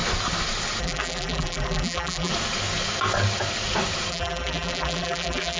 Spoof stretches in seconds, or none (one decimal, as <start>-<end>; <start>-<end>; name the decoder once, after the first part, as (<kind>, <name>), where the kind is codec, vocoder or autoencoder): 0.8-2.3 (vocoder, BigVGAN v2); 4.1-5.6